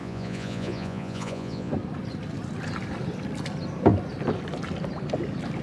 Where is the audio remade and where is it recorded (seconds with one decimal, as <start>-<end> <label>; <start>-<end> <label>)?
0.0-1.7 remade; 1.7-5.6 recorded